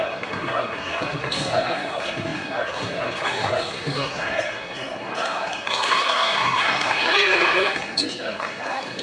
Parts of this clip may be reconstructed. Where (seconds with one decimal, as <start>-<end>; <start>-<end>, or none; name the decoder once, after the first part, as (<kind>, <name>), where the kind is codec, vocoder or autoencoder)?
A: 0.0-9.0 (codec, SNAC)